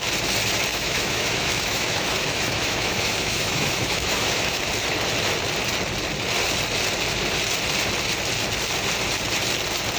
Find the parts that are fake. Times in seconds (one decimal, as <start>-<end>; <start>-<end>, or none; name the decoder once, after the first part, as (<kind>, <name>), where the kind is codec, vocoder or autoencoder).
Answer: 0.7-4.6 (autoencoder, DAC-VAE)

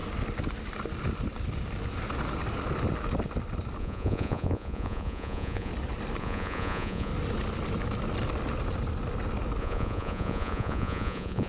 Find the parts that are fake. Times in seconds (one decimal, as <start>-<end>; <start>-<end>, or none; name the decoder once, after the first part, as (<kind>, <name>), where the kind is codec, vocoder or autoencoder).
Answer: 3.8-5.7 (vocoder, Vocos); 6.2-7.1; 9.6-11.5

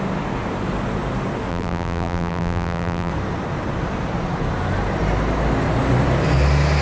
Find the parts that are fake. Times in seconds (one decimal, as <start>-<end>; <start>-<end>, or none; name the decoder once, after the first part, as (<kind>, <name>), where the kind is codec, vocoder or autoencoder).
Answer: 1.5-3.1 (vocoder, BigVGAN v2)

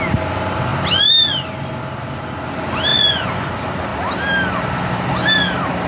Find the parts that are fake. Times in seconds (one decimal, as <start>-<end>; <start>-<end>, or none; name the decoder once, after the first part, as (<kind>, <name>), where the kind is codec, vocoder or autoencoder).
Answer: 2.9-3.5 (vocoder, Vocos)

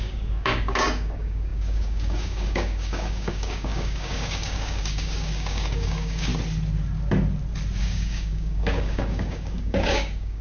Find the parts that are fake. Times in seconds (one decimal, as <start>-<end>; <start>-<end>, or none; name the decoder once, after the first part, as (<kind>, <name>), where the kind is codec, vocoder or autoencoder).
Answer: 0.0-6.3 (codec, DAC); 7.8-10.4

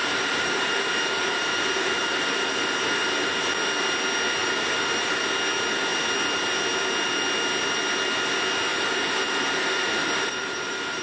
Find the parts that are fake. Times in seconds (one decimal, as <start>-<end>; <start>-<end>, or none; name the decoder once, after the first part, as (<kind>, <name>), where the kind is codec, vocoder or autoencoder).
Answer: 0.0-3.5 (vocoder, BigVGAN v2); 4.4-5.2; 8.7-11.0

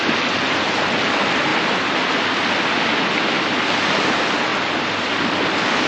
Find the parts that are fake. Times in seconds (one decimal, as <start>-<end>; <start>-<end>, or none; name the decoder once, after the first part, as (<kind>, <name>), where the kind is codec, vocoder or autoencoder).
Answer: none